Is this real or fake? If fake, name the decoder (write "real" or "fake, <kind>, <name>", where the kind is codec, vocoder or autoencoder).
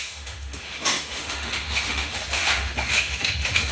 fake, autoencoder, DAC-VAE